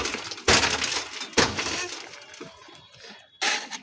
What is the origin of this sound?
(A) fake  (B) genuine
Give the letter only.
B